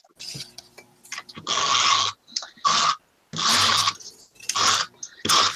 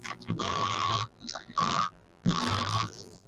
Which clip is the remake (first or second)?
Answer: second